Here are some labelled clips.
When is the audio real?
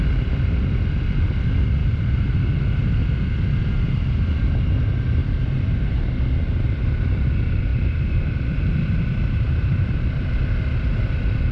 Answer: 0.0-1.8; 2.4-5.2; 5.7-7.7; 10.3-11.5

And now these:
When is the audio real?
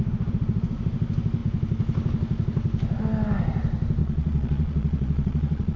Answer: 0.0-4.0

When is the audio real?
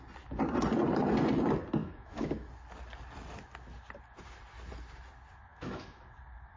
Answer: 0.0-1.8; 2.5-5.5; 6.0-6.6